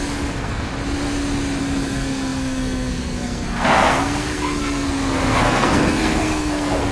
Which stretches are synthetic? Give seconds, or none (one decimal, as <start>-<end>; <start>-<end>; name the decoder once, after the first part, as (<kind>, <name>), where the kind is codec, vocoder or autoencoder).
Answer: 0.0-0.7 (codec, SNAC); 1.6-6.9